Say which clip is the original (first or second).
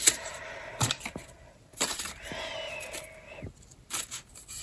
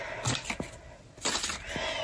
second